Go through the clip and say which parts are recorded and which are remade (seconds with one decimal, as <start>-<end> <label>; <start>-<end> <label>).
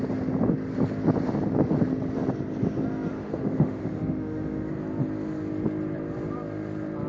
0.0-3.1 recorded; 3.1-4.7 remade; 4.7-7.1 recorded